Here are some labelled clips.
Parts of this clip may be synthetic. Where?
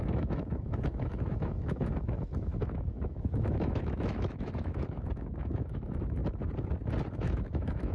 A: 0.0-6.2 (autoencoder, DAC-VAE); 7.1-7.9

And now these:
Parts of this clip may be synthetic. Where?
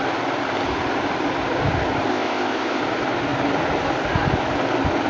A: 2.1-2.8 (codec, ZipCodec)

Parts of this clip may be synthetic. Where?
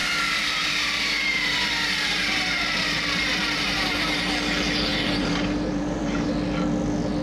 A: 0.0-4.2 (vocoder, BigVGAN v2); 4.9-6.3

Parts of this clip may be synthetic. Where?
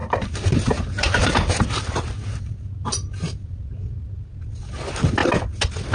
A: 0.0-2.4 (vocoder, BigVGAN v2)